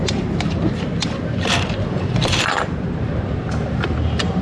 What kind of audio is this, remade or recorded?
remade